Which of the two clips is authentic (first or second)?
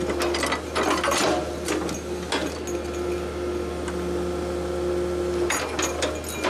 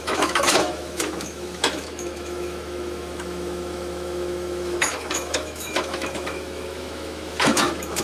first